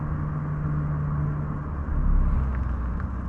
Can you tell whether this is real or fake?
real